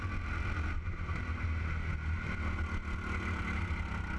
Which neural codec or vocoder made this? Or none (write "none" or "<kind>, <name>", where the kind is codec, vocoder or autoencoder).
none